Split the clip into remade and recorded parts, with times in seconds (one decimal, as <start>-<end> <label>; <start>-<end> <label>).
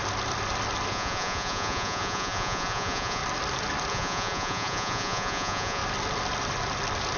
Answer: 0.0-0.9 recorded; 0.9-3.2 remade; 3.2-3.9 recorded; 3.9-5.8 remade; 5.8-7.2 recorded